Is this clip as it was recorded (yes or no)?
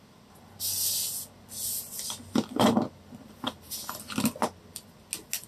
yes